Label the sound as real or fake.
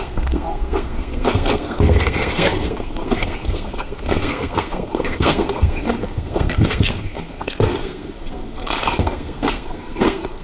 fake